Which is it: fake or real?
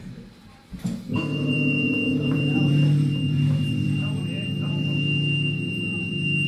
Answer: fake